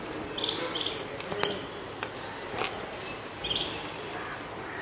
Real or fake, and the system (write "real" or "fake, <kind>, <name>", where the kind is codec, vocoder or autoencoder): real